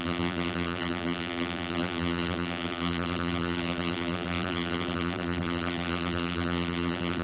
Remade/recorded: remade